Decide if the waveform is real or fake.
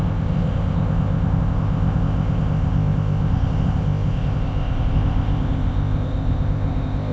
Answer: fake